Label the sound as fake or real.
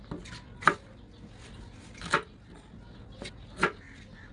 real